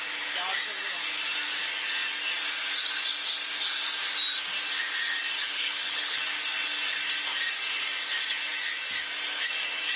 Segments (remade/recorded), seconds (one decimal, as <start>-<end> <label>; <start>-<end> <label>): 0.0-5.4 recorded; 5.4-6.2 remade; 6.2-10.0 recorded